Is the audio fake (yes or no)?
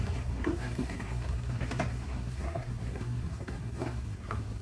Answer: yes